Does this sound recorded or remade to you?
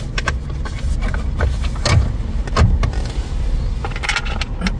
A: recorded